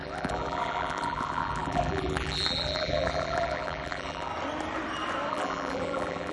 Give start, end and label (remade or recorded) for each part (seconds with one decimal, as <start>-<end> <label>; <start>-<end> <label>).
0.0-4.3 remade; 4.3-5.3 recorded; 5.3-6.3 remade